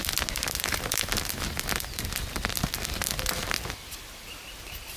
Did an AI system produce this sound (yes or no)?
no